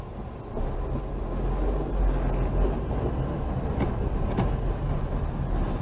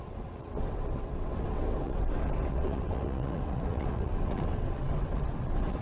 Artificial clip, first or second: second